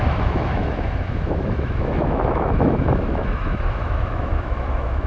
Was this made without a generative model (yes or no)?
no